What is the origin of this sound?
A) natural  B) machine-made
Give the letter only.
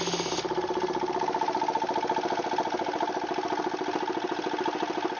A